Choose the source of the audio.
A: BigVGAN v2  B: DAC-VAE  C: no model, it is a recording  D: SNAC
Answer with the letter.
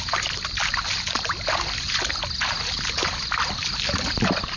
C